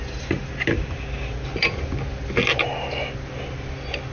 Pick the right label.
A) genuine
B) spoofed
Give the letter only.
A